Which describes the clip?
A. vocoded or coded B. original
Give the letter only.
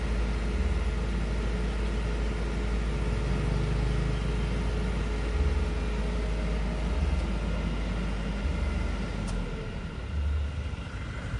B